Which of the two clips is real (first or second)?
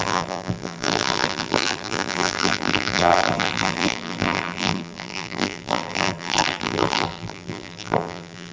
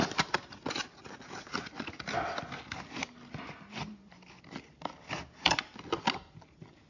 second